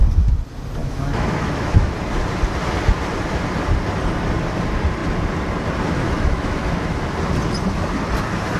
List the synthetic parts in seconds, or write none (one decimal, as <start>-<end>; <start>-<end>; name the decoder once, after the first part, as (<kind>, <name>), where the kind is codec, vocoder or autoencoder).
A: 0.8-1.9 (autoencoder, DAC-VAE); 6.0-7.1